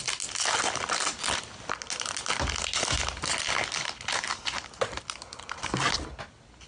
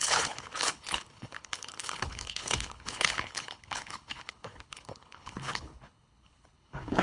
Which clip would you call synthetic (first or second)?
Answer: second